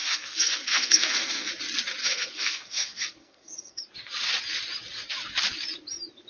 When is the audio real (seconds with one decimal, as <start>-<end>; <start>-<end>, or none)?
1.5-2.0; 3.8-6.3